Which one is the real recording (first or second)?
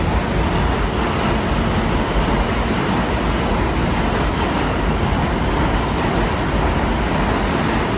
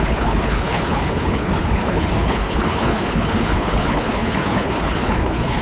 first